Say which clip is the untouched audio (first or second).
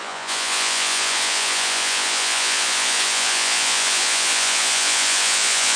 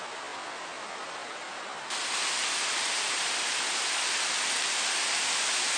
second